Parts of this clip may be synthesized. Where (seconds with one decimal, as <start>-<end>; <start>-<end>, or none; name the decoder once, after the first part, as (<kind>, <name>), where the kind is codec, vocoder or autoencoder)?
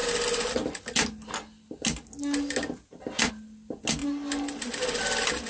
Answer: none